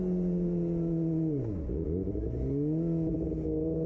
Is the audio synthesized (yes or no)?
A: no